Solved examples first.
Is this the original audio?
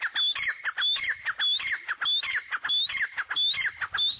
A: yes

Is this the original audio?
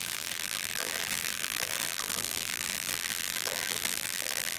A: no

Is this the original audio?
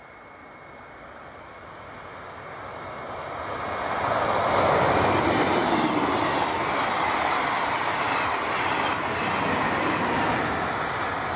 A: yes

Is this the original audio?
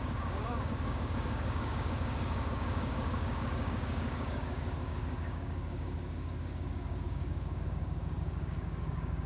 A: no